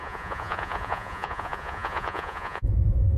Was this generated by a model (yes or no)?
yes